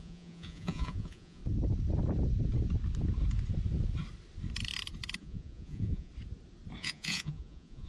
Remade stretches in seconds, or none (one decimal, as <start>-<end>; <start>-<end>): 0.0-1.4; 5.2-6.1; 6.8-7.9